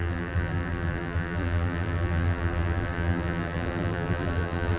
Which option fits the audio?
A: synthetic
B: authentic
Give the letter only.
A